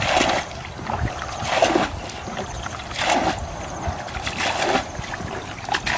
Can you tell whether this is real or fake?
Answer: real